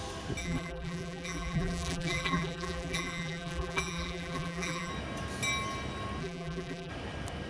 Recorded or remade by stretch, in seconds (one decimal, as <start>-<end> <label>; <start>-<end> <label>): 0.0-0.4 recorded; 0.4-4.9 remade; 4.9-6.2 recorded; 6.2-6.9 remade; 6.9-7.5 recorded